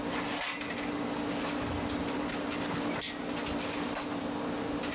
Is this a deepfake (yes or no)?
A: no